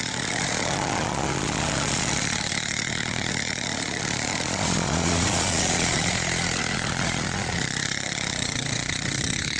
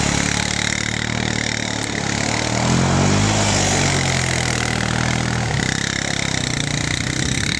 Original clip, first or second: second